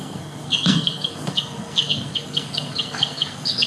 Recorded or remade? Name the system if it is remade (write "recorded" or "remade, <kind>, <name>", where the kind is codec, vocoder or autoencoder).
remade, codec, SNAC